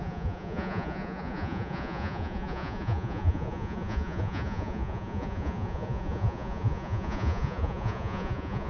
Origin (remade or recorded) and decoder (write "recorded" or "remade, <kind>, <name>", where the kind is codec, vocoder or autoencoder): remade, vocoder, Vocos